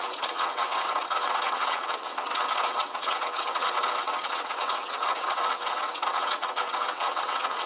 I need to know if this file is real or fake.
fake